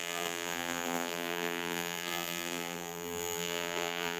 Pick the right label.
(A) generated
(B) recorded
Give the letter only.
A